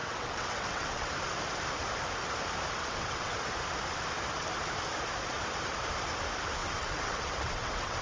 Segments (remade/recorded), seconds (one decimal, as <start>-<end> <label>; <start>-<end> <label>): 0.0-1.1 remade; 1.1-2.8 recorded; 2.8-3.3 remade; 3.3-6.6 recorded; 6.6-8.0 remade